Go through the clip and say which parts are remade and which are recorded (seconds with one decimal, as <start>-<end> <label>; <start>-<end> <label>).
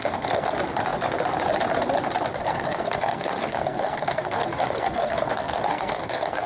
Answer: 0.0-0.5 remade; 0.5-2.4 recorded; 2.4-6.5 remade